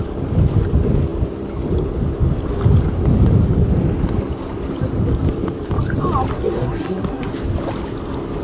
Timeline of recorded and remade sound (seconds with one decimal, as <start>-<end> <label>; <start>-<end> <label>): 0.0-6.3 recorded; 6.3-7.3 remade; 7.3-8.4 recorded